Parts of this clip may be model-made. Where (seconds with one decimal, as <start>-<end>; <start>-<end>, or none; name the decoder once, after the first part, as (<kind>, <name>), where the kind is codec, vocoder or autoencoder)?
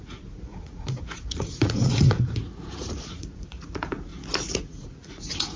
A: 0.0-4.1 (vocoder, Vocos); 4.6-5.6